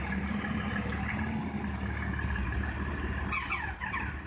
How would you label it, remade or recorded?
recorded